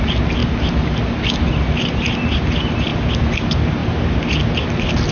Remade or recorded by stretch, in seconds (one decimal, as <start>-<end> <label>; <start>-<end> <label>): 0.0-5.1 recorded